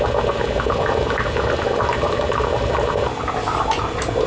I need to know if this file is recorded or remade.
recorded